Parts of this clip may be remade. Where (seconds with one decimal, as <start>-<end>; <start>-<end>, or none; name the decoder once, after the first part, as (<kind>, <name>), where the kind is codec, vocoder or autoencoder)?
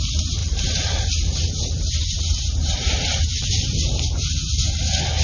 0.4-3.5 (vocoder, BigVGAN v2)